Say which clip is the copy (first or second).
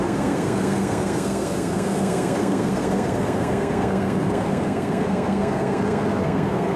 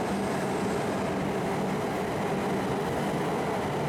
first